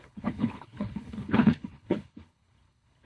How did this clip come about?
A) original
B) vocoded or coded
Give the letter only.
B